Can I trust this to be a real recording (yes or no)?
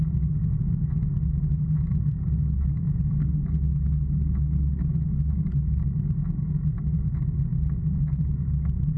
yes